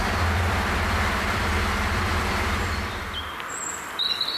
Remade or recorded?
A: remade